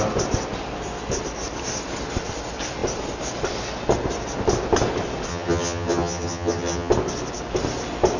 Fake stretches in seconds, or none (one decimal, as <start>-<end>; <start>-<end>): 5.3-6.9